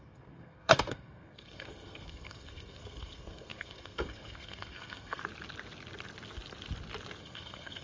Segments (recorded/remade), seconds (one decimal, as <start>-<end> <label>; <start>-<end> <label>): 0.0-5.2 remade; 5.2-7.2 recorded; 7.2-7.8 remade